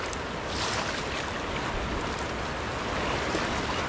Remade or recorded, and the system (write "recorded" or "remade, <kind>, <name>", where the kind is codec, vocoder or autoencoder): recorded